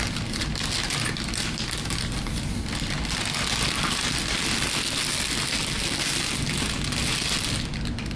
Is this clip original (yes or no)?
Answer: yes